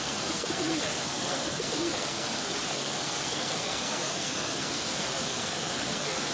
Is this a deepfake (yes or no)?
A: yes